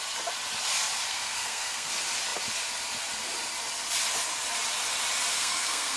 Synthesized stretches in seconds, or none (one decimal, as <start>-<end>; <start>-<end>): 1.1-1.9; 5.3-6.0